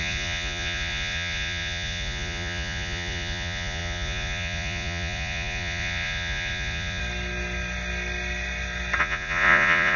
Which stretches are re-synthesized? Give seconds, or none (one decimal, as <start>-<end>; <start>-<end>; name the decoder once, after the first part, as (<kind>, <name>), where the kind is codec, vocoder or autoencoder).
0.0-7.0 (vocoder, Vocos); 9.0-10.0